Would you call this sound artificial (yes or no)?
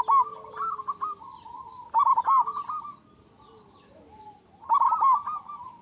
no